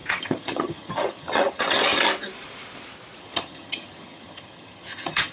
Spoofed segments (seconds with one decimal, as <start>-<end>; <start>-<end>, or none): 0.0-2.1; 3.2-5.3